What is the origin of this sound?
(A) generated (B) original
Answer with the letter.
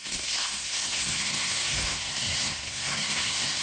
A